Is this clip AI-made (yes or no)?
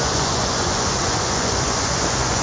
yes